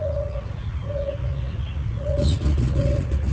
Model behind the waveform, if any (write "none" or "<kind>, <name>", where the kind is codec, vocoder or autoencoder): vocoder, Vocos